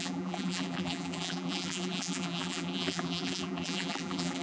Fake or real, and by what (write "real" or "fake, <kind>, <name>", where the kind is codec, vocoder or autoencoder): fake, vocoder, BigVGAN v2